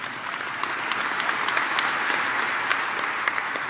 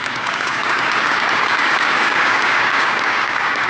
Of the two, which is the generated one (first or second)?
second